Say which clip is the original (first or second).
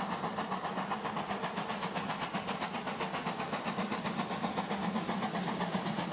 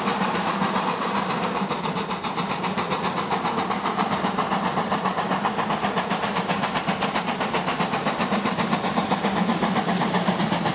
first